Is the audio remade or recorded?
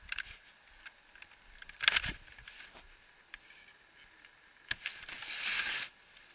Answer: recorded